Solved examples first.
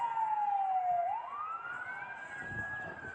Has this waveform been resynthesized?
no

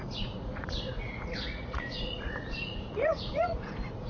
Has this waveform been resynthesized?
yes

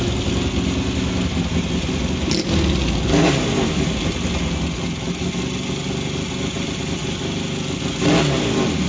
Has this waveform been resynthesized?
no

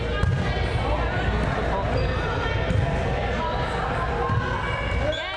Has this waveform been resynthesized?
no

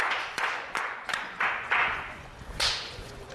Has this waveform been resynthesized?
yes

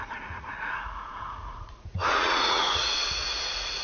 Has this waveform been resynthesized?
yes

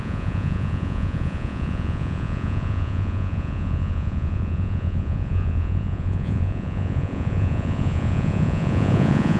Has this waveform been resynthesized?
yes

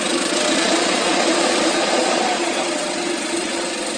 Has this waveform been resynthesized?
yes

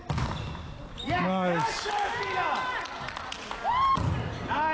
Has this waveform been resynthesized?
no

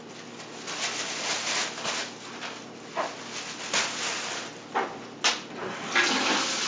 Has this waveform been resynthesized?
no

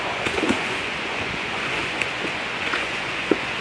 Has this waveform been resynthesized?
yes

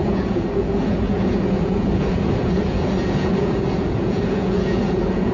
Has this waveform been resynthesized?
yes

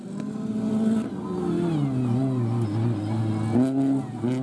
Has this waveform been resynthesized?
no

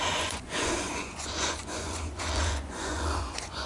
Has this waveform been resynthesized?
yes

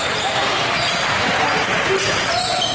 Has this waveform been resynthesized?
no